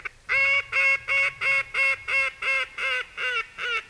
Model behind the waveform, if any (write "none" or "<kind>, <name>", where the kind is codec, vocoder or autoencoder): none